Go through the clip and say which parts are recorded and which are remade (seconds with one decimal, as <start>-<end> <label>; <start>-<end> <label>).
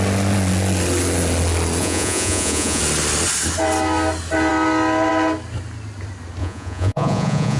0.0-1.8 recorded; 1.8-2.8 remade; 2.8-6.4 recorded; 6.4-7.6 remade